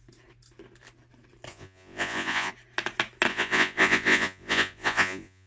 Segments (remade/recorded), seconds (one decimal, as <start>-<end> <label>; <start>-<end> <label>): 0.0-1.5 recorded; 1.5-2.5 remade; 2.5-3.3 recorded; 3.3-5.5 remade